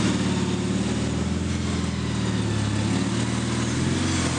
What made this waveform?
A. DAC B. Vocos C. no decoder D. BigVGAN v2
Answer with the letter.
C